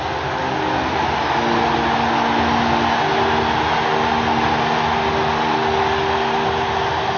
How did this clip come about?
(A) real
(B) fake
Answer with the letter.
A